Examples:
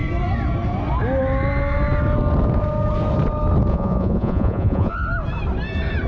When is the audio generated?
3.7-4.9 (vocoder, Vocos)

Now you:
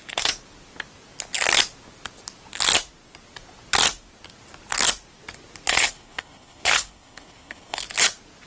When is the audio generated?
5.7-7.8 (codec, HILCodec)